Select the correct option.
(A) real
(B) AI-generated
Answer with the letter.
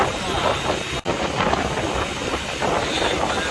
A